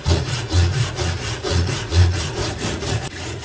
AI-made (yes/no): yes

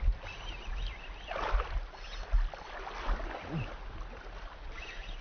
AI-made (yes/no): no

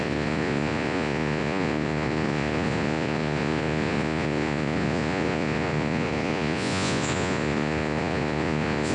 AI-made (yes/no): yes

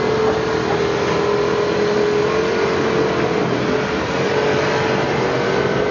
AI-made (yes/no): no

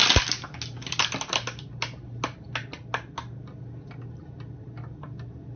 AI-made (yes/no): no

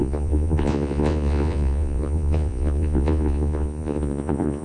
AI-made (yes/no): yes